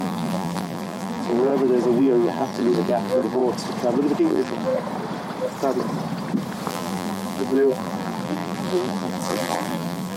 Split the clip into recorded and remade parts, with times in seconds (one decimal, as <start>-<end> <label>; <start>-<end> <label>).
0.0-1.5 remade; 1.5-2.0 recorded; 2.0-3.4 remade; 3.4-4.2 recorded; 4.2-4.7 remade; 4.7-6.7 recorded; 6.7-10.2 remade